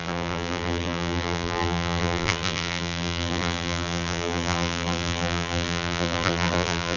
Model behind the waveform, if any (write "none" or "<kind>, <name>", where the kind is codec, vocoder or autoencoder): vocoder, BigVGAN v2